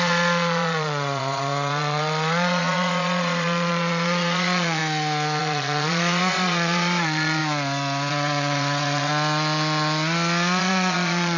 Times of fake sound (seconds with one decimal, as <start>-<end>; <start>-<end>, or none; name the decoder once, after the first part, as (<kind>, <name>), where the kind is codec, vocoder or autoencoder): 0.0-4.8 (vocoder, Vocos); 5.4-7.4; 8.1-9.1; 10.6-11.4